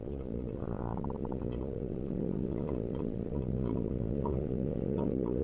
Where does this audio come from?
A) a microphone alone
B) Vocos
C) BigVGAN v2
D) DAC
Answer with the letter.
B